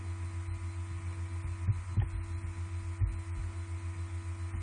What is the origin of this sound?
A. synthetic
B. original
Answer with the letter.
B